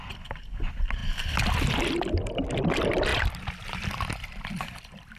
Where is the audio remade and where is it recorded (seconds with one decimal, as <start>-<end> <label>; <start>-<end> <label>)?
0.0-5.2 recorded